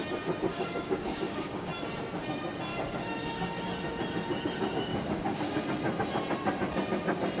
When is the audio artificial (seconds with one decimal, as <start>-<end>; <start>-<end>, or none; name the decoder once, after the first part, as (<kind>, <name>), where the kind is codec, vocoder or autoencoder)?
0.5-1.7 (codec, DAC); 2.7-3.6; 4.9-5.6